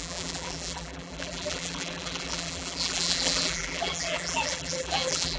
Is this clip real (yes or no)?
no